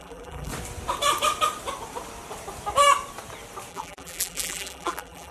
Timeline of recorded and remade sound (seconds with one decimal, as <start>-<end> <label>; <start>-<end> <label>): 0.0-0.5 remade; 0.5-3.7 recorded; 3.7-5.3 remade